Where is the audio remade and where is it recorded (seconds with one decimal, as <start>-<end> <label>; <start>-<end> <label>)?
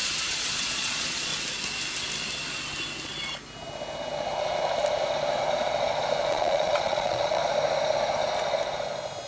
0.0-1.3 remade; 1.3-6.3 recorded; 6.3-7.4 remade; 7.4-9.3 recorded